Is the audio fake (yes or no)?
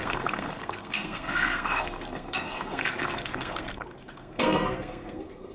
yes